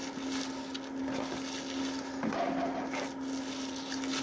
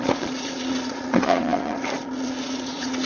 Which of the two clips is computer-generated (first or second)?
second